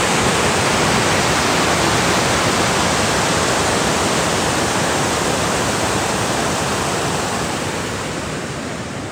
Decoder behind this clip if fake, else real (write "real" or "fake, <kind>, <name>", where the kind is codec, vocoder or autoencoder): fake, vocoder, BigVGAN v2